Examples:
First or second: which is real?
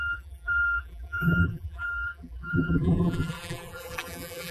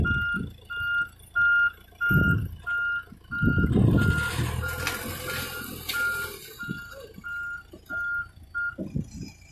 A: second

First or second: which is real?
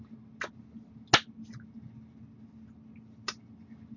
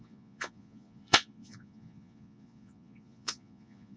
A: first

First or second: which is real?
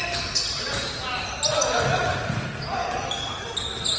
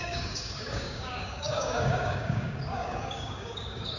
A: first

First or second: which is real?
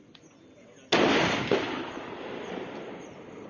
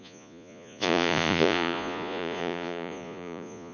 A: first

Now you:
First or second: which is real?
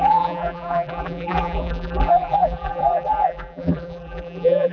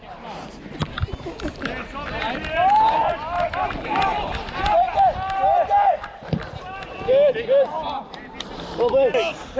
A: second